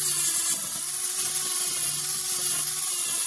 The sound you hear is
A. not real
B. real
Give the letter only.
B